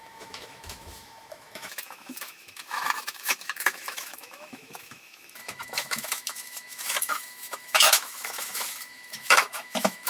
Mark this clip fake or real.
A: fake